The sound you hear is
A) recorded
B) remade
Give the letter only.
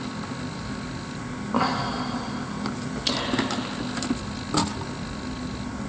A